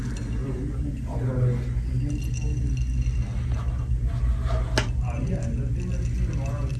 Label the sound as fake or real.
real